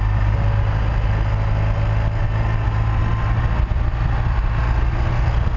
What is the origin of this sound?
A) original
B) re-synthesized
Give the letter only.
A